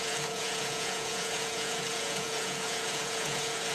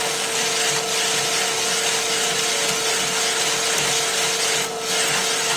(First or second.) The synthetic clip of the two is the first